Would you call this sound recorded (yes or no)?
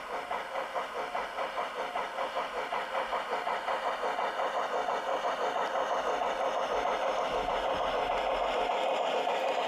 yes